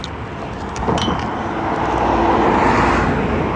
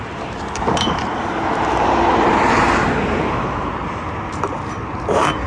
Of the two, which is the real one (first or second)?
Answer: first